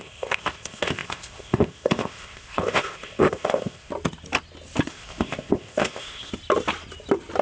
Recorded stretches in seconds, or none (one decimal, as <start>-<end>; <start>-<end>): 3.9-4.9; 6.3-7.4